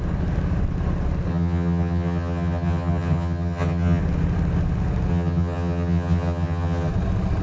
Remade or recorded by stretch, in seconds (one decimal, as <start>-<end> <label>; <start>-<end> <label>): 0.0-1.3 recorded; 1.3-4.0 remade; 4.0-5.1 recorded; 5.1-6.9 remade; 6.9-7.4 recorded